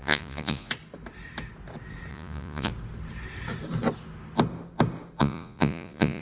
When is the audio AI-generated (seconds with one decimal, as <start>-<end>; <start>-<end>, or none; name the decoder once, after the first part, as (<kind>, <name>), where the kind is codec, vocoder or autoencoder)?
0.0-0.7 (vocoder, Vocos); 2.1-2.7; 5.2-6.2